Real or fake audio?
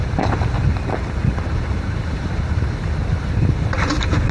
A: fake